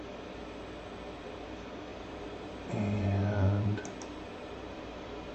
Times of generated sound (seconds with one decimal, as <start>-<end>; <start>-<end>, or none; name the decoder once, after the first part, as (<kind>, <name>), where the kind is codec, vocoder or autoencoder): 1.9-5.3 (vocoder, BigVGAN v2)